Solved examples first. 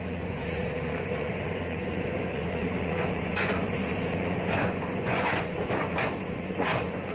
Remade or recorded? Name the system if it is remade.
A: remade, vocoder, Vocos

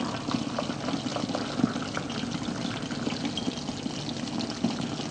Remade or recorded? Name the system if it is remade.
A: recorded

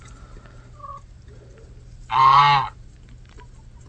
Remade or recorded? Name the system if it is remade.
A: recorded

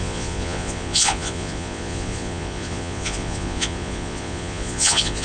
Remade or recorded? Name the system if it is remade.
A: remade, vocoder, Vocos